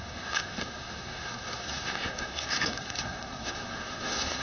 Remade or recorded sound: remade